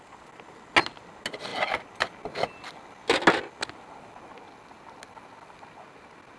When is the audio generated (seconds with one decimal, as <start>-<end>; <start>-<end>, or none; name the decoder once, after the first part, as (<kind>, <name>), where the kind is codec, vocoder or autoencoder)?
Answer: none